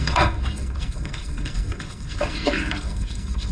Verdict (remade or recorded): remade